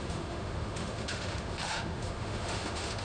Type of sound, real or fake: fake